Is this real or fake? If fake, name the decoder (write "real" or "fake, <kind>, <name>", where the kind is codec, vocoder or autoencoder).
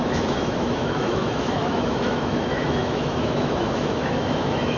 fake, autoencoder, DAC-VAE